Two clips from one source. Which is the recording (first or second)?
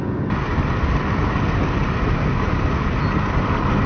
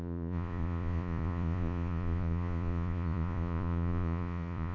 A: first